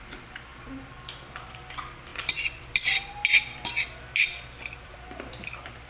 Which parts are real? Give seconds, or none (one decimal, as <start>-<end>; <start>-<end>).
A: 0.0-0.5; 1.7-2.1